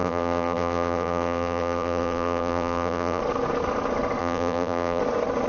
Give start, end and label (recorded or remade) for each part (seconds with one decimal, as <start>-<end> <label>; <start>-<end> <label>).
0.0-3.2 remade; 3.2-4.2 recorded; 4.2-5.0 remade; 5.0-5.5 recorded